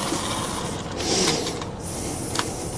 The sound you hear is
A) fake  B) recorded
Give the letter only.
B